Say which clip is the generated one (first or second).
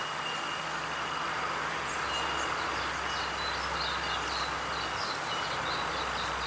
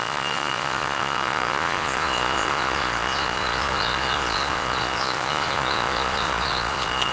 second